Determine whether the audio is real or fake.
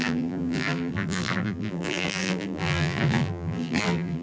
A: fake